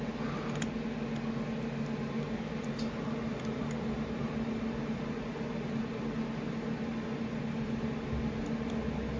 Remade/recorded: recorded